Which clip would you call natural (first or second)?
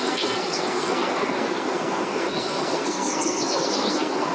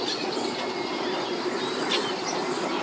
second